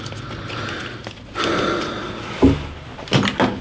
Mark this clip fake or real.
real